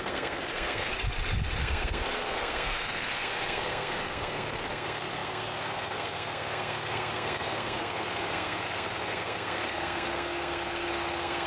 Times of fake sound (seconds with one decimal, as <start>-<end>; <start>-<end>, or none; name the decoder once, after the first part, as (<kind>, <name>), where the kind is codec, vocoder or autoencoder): 0.0-0.9 (codec, SNAC); 1.6-11.5